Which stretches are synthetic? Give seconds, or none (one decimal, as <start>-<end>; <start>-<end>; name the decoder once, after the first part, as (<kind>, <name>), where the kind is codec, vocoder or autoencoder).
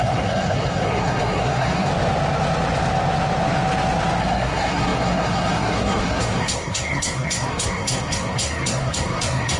0.0-1.9 (codec, SNAC); 4.2-9.6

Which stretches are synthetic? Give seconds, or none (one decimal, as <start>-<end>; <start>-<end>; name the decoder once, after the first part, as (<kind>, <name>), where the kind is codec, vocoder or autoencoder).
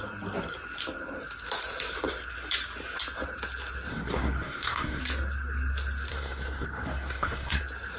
3.9-5.0 (codec, SNAC); 6.1-7.6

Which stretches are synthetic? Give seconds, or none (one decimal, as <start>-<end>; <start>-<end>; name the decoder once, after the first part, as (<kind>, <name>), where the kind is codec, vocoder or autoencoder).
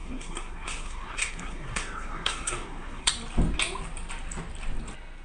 0.0-3.1 (codec, SNAC)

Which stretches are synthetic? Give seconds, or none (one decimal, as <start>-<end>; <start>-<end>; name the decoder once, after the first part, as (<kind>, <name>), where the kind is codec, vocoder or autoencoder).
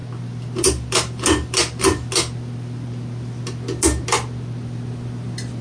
none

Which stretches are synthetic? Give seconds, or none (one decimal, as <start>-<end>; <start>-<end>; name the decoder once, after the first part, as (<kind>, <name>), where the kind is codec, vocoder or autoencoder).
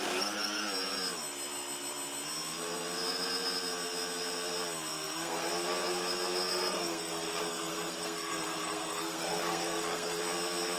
4.9-5.5 (codec, SNAC); 6.5-10.2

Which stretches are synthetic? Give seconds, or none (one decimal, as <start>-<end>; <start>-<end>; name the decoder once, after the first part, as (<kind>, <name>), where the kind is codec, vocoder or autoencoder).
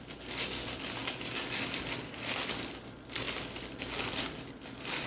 none